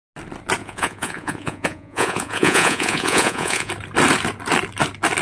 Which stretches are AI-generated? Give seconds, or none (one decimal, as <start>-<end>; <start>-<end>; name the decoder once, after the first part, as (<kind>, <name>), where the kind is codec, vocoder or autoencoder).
0.6-3.7 (vocoder, Vocos)